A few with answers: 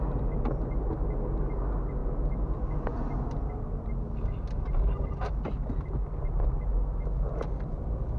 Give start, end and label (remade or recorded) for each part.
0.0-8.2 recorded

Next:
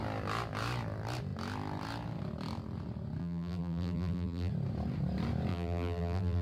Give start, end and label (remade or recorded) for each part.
0.0-3.2 recorded; 3.2-4.5 remade; 4.5-5.5 recorded; 5.5-6.4 remade

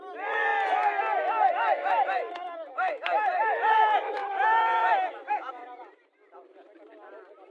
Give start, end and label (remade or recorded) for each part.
0.0-0.5 remade; 0.5-1.5 recorded; 1.5-7.5 remade

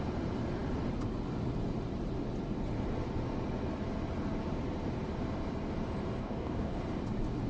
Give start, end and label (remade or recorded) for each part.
0.0-6.2 recorded; 6.2-6.8 remade; 6.8-7.5 recorded

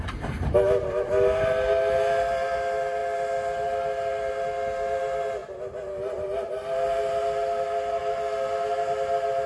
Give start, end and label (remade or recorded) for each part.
0.0-9.5 recorded

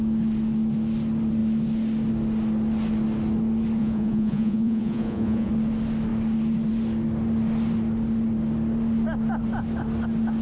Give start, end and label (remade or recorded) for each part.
0.0-3.8 recorded; 3.8-5.5 remade; 5.5-10.4 recorded

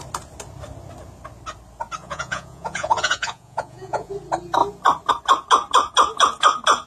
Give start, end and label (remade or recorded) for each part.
0.0-2.0 recorded; 2.0-4.1 remade; 4.1-6.9 recorded

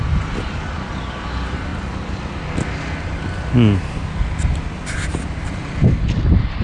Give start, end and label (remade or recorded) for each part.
0.0-6.6 recorded